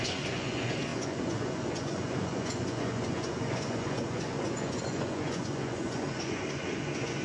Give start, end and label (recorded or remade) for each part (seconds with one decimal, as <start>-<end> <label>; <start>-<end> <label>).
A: 0.0-7.2 remade